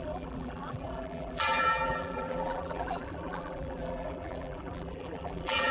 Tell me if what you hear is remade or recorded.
remade